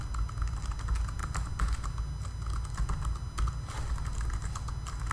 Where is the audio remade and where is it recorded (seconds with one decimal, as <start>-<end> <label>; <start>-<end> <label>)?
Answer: 0.0-5.1 recorded

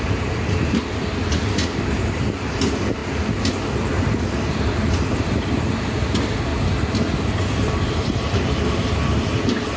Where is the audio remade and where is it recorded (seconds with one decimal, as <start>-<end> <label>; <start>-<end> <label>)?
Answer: 0.0-3.0 remade; 3.0-4.6 recorded; 4.6-6.5 remade; 6.5-7.2 recorded; 7.2-9.8 remade